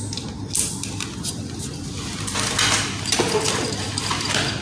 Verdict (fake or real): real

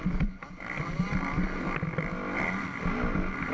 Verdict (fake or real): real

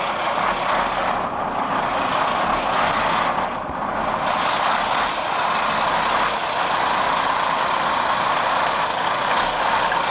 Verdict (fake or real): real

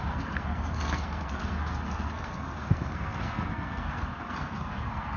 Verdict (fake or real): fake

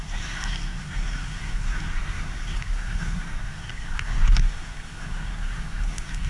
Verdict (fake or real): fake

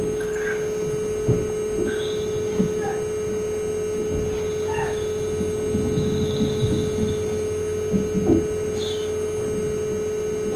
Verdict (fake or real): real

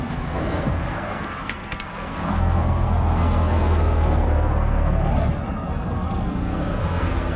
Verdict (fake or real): fake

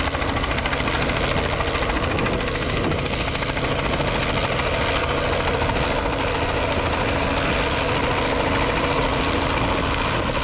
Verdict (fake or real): real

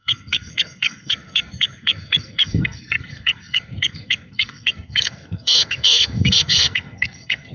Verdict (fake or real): fake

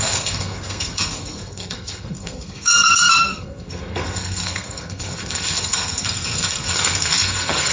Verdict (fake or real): fake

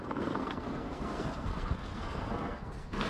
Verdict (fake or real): fake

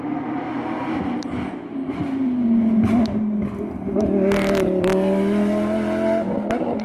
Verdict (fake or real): real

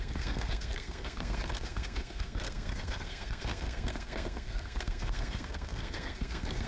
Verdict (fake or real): fake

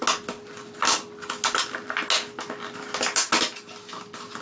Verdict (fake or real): real